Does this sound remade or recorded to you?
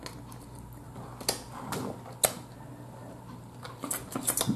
recorded